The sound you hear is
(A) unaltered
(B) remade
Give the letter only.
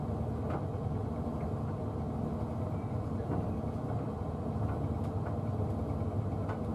A